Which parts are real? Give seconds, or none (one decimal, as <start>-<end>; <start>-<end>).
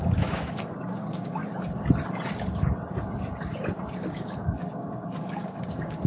1.4-4.0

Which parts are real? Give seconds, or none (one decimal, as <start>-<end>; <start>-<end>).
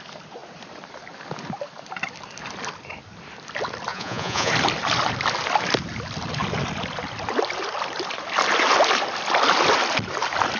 0.0-3.9; 4.5-10.6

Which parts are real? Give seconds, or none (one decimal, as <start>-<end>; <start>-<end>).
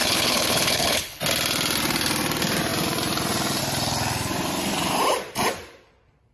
1.2-6.3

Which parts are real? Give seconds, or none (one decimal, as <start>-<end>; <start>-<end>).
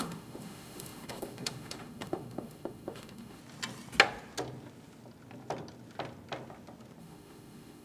3.4-7.0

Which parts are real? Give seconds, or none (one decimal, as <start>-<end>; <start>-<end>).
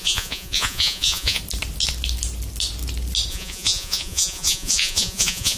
1.4-3.3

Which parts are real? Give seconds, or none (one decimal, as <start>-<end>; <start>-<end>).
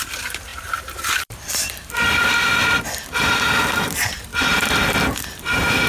none